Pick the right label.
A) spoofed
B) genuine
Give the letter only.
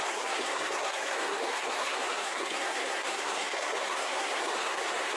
A